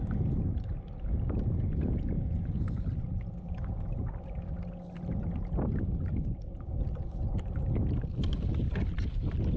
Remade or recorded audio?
recorded